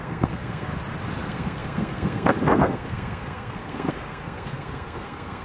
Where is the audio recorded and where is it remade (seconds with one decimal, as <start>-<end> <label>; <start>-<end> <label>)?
0.0-0.7 remade; 0.7-1.2 recorded; 1.2-5.4 remade